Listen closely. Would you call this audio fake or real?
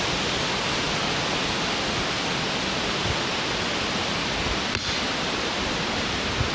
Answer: real